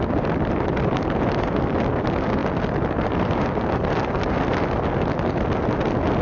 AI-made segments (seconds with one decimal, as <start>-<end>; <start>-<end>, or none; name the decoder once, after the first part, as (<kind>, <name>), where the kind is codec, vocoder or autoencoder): none